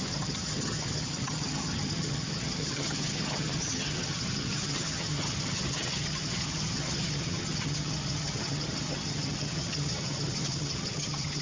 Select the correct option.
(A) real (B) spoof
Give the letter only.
B